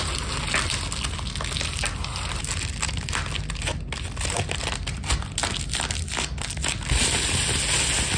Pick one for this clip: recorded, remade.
recorded